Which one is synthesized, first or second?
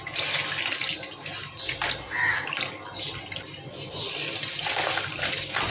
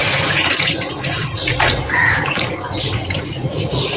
second